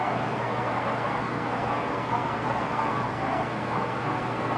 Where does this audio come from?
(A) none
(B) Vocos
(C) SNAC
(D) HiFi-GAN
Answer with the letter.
C